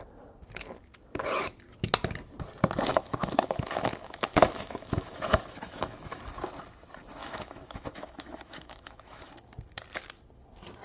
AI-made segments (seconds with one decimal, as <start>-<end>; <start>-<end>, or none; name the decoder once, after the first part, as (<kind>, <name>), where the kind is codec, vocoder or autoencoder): 2.9-6.2 (autoencoder, DAC-VAE); 7.2-9.3